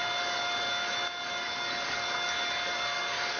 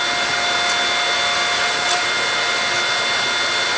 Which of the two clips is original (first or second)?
second